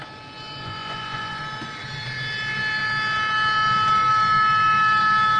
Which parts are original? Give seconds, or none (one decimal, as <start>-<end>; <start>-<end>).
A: 0.0-0.6; 1.4-5.4